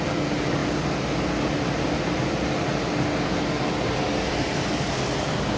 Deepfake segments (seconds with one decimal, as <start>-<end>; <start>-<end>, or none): none